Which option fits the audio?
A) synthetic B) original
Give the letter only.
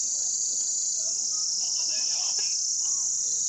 B